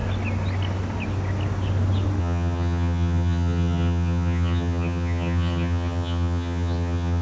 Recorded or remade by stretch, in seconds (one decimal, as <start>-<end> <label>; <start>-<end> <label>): 0.0-2.2 recorded; 2.2-7.2 remade